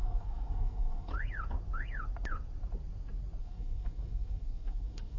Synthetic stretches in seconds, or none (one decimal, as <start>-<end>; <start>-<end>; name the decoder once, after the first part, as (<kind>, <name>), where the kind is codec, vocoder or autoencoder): 0.0-1.1 (codec, SNAC); 3.4-5.2